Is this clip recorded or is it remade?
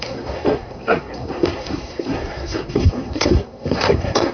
remade